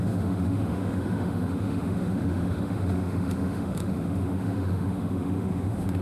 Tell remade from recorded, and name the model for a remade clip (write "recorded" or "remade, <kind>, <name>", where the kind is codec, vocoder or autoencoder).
remade, autoencoder, DAC-VAE